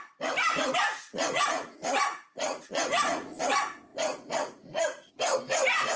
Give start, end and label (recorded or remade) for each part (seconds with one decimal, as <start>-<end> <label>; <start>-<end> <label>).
0.0-1.1 recorded; 1.1-3.4 remade; 3.4-3.9 recorded; 3.9-5.1 remade; 5.1-6.0 recorded